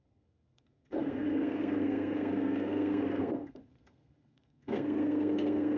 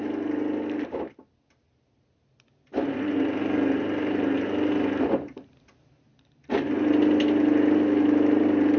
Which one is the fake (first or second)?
first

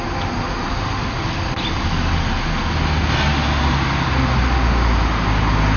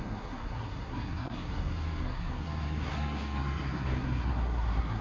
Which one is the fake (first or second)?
second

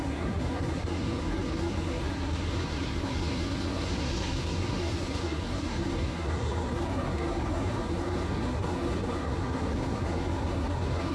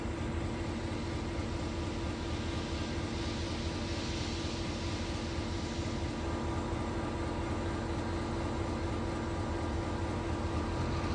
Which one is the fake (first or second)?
first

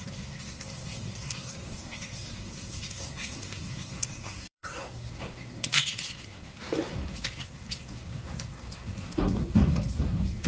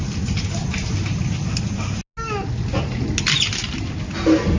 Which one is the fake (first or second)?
first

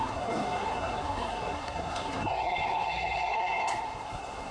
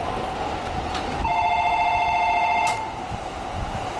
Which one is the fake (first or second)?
first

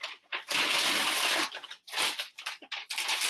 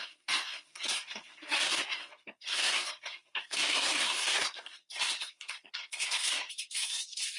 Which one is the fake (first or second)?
second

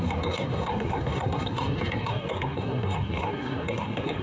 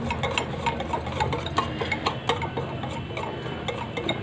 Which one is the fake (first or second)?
first